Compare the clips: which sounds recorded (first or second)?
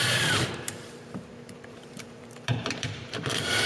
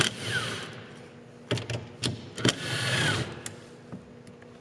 second